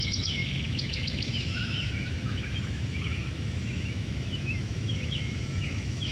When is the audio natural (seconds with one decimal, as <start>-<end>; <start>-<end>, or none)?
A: none